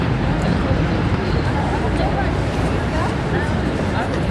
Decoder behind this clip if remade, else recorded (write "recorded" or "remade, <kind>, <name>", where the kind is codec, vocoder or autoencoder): remade, vocoder, BigVGAN v2